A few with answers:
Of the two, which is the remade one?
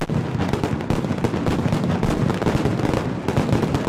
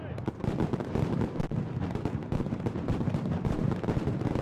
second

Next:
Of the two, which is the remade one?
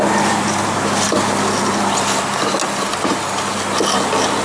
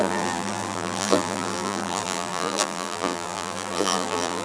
second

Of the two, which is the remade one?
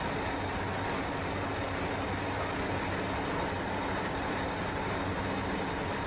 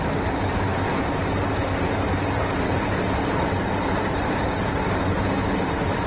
second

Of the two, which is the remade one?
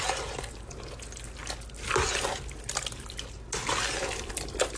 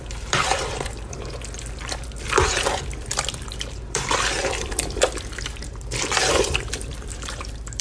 second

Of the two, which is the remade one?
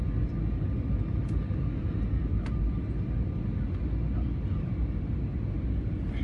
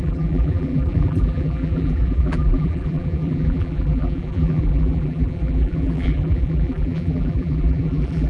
second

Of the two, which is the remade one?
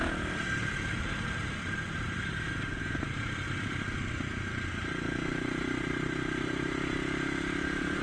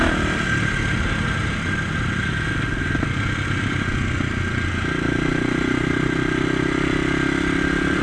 first